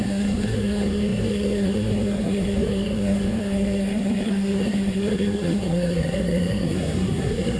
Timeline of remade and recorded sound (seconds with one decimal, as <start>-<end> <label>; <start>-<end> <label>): 0.0-7.6 remade